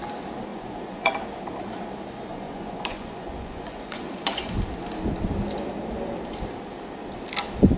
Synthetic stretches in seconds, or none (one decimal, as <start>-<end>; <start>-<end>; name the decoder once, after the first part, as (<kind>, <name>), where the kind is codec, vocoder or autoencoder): 0.5-1.1 (vocoder, Vocos); 2.3-4.6